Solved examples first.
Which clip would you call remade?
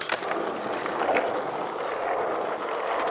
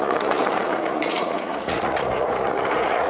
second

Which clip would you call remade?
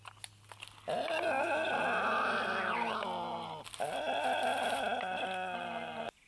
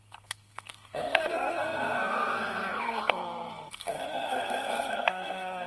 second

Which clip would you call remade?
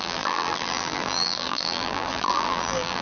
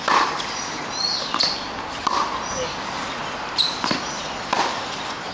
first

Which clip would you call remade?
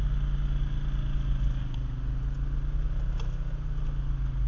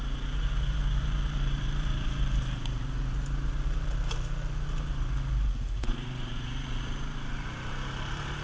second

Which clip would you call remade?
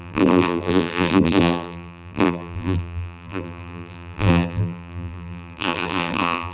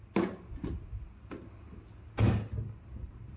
first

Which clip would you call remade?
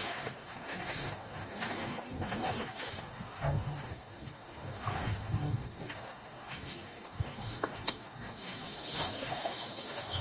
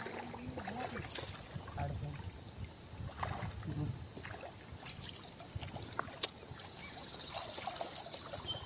first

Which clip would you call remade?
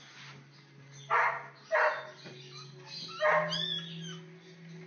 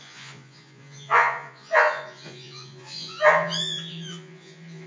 second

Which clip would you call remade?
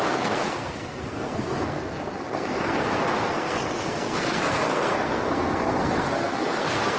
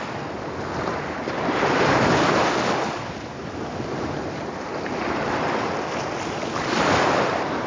first